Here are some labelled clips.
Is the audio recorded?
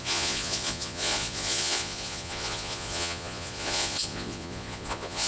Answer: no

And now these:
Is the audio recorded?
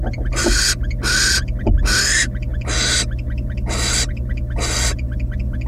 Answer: yes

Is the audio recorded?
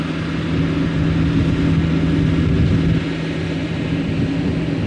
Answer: yes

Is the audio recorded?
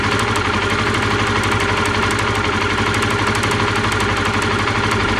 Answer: yes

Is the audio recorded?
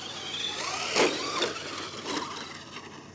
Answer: yes